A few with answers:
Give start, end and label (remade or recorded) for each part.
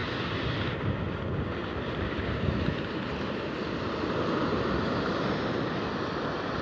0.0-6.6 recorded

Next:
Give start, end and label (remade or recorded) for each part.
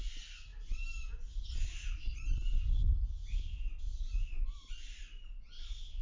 0.0-6.0 recorded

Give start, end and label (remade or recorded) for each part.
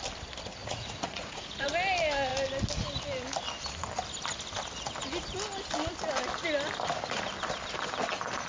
0.0-0.6 recorded; 0.6-1.7 remade; 1.7-8.5 recorded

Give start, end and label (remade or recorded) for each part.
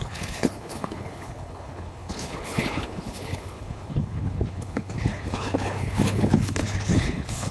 0.0-7.5 remade